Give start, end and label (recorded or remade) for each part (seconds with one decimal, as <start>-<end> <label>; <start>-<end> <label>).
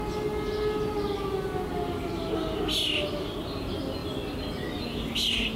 0.0-5.6 recorded